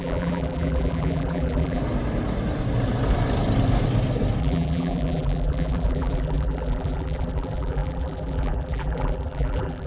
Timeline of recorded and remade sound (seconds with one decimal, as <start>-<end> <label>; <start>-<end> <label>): 0.0-1.8 remade; 1.8-4.4 recorded; 4.4-9.9 remade